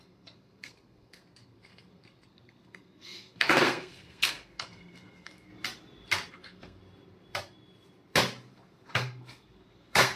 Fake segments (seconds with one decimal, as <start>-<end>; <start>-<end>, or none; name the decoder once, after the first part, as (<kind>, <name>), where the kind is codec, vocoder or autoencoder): 0.0-5.5 (codec, SNAC); 6.3-6.8; 8.5-10.2